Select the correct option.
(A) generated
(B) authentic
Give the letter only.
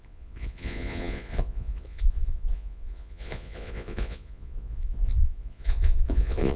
A